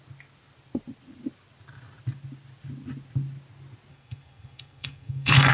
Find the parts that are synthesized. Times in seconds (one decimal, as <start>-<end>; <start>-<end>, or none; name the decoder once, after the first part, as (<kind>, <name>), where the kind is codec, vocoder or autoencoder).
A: 3.9-5.5 (codec, SNAC)